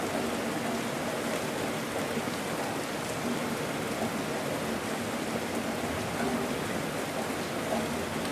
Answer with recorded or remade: recorded